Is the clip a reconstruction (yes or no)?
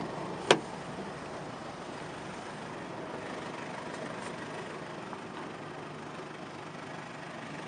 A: no